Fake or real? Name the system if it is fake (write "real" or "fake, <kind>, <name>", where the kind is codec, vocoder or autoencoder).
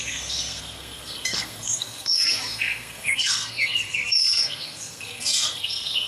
fake, codec, SNAC